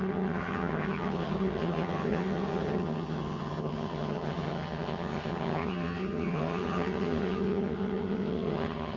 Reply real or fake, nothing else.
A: fake